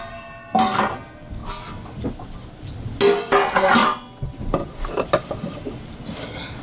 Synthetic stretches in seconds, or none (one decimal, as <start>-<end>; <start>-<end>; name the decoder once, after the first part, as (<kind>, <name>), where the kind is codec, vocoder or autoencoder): none